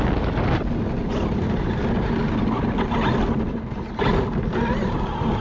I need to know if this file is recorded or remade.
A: recorded